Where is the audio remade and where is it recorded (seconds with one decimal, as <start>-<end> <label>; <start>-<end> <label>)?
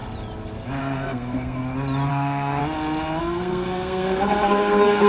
0.0-0.8 recorded; 0.8-1.6 remade; 1.6-2.1 recorded; 2.1-2.6 remade; 2.6-3.2 recorded; 3.2-5.1 remade